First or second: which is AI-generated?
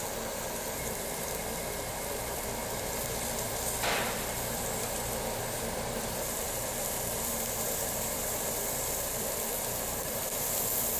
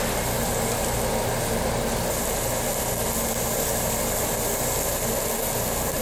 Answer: first